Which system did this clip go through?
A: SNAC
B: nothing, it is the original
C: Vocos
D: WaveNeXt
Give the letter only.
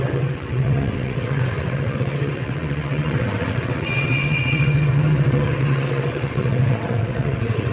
D